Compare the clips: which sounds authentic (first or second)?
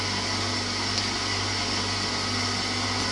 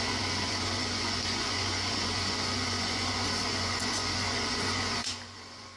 first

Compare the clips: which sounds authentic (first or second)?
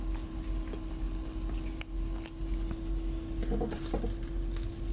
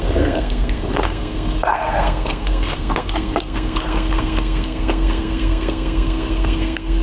first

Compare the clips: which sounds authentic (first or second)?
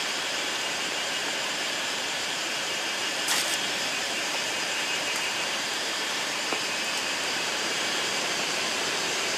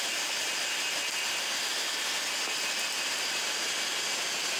second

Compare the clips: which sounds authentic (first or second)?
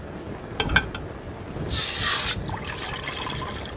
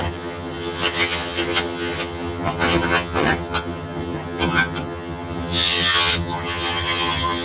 first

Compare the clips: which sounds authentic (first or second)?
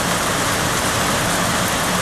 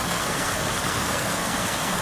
first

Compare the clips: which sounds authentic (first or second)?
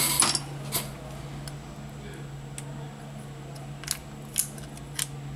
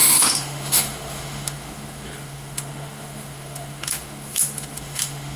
first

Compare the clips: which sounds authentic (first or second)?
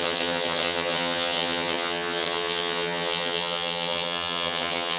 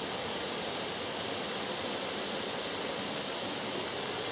second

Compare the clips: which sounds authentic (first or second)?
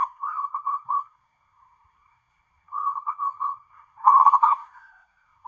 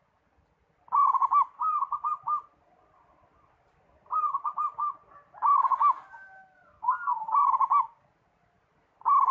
second